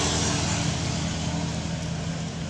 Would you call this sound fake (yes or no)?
no